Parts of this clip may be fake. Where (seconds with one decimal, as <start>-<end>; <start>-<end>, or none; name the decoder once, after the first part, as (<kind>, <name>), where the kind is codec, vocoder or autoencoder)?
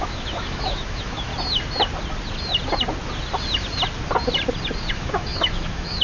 0.0-1.3 (autoencoder, DAC-VAE); 4.9-6.0